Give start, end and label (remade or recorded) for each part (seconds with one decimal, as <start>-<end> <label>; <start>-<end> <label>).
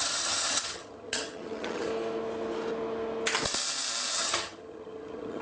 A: 0.0-1.9 remade; 1.9-4.1 recorded; 4.1-5.4 remade